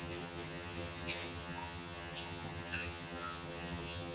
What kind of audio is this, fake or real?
fake